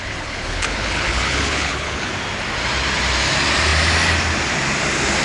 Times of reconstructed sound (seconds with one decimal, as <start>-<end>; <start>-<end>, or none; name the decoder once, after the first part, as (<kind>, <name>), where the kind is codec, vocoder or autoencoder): 0.0-2.1 (codec, HILCodec)